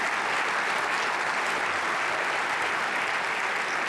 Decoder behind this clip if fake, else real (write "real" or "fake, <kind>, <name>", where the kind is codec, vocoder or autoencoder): real